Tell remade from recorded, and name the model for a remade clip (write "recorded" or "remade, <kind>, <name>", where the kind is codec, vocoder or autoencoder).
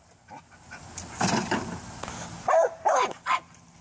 recorded